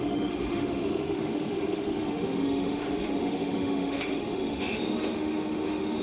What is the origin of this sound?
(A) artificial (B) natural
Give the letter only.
A